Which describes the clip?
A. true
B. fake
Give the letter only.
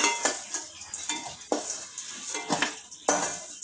A